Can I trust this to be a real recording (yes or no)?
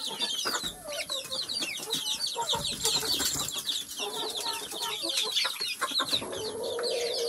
yes